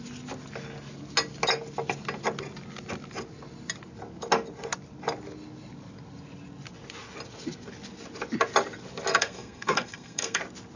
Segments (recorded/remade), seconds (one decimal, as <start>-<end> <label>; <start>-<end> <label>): 0.0-9.1 recorded; 9.1-10.4 remade; 10.4-10.8 recorded